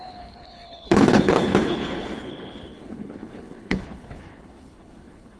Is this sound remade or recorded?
remade